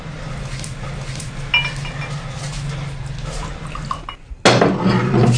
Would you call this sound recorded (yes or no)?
yes